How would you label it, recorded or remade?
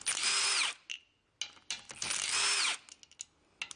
recorded